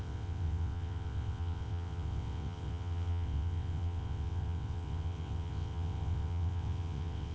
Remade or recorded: remade